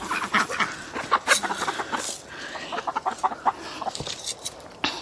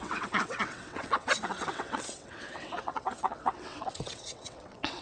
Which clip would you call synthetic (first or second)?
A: second